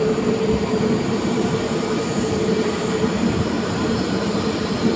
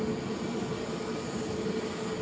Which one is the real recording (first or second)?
second